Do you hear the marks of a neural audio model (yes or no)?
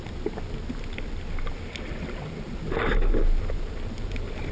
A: no